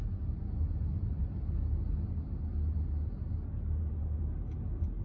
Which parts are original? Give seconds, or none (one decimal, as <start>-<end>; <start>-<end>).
0.0-5.0